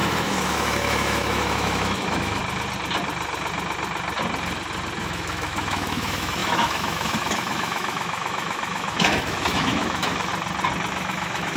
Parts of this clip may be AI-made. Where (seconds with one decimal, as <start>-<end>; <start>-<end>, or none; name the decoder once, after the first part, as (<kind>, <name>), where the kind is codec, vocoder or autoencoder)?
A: 0.0-2.4 (autoencoder, DAC-VAE); 5.0-10.3; 10.9-11.6